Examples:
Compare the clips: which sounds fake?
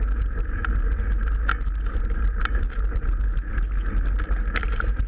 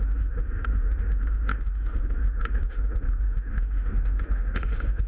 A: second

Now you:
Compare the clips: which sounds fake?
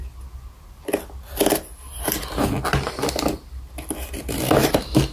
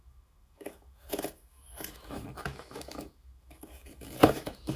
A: second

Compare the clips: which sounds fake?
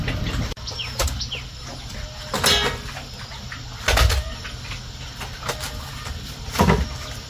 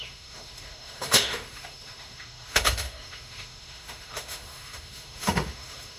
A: second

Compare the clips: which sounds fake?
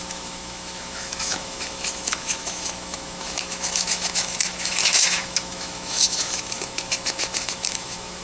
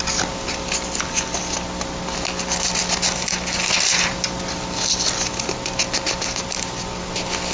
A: first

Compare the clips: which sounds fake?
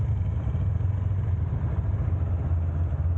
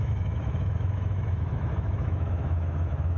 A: second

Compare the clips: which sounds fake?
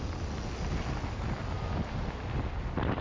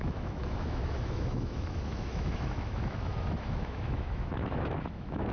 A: second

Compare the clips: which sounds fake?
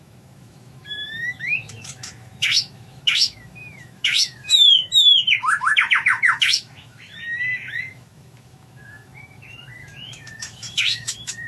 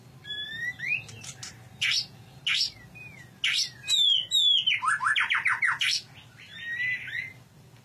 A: first